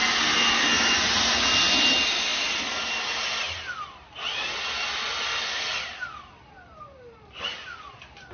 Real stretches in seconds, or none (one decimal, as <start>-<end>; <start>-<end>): 0.0-2.3; 5.8-8.3